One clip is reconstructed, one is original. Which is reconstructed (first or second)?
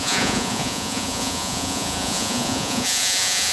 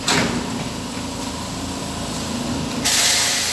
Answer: first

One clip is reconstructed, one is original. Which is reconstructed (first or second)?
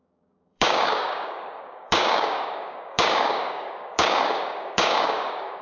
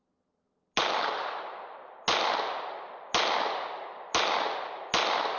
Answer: first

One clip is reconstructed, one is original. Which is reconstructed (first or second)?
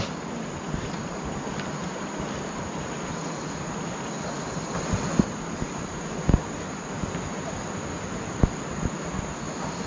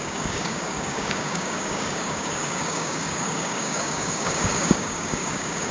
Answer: second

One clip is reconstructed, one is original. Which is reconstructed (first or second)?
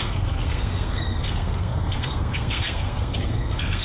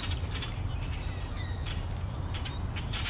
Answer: first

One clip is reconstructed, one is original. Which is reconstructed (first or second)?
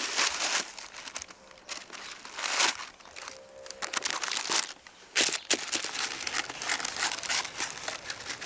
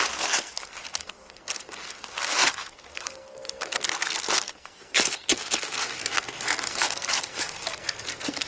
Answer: second